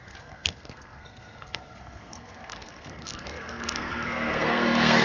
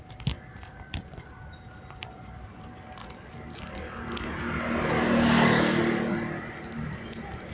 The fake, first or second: first